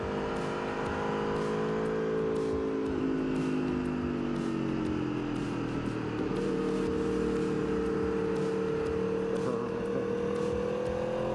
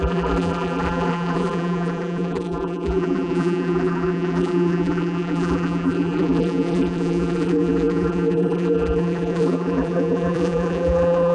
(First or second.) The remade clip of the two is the second